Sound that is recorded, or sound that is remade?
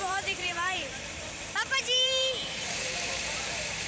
remade